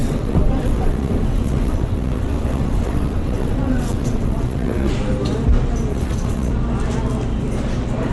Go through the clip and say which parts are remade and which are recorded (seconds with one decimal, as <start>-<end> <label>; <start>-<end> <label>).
0.0-4.9 remade; 4.9-5.9 recorded; 5.9-6.5 remade; 6.5-8.1 recorded